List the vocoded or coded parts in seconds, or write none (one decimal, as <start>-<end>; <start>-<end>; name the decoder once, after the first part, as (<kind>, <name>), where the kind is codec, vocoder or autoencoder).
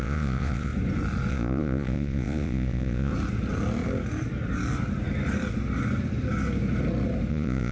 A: 0.0-0.7 (vocoder, Vocos); 1.3-3.1; 7.3-7.7